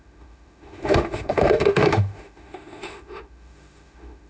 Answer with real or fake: fake